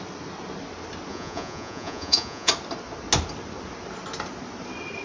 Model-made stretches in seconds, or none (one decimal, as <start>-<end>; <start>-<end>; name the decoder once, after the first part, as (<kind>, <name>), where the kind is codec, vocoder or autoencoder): 1.1-2.5 (vocoder, Vocos)